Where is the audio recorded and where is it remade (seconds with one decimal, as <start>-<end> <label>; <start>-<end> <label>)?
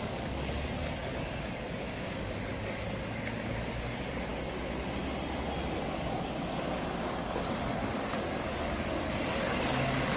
0.0-4.3 remade; 4.3-5.7 recorded; 5.7-10.2 remade